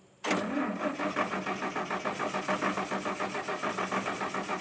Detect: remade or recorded recorded